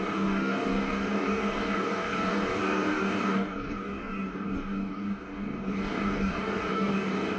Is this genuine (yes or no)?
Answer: no